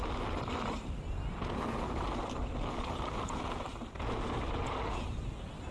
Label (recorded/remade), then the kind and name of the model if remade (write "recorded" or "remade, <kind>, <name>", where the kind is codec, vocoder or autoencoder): recorded